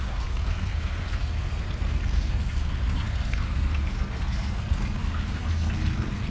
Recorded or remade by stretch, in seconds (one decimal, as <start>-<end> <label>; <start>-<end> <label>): 0.0-6.3 remade